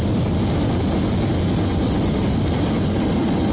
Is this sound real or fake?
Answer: real